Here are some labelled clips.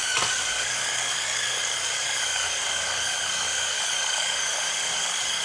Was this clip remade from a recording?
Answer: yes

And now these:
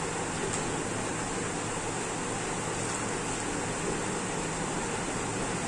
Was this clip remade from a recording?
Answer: no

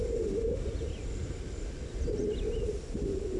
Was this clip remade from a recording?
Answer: no